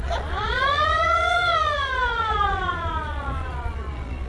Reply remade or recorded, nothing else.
remade